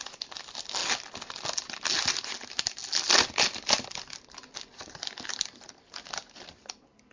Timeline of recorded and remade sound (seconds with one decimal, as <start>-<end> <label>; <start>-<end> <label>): 0.0-7.1 recorded